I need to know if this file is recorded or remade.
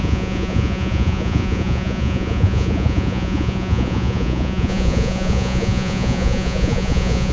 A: remade